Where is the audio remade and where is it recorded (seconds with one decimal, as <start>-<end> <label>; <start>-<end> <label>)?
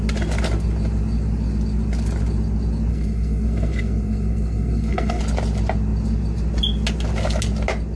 0.0-2.9 recorded; 2.9-5.2 remade; 5.2-8.0 recorded